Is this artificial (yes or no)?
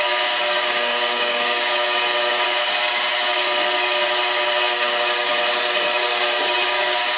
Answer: yes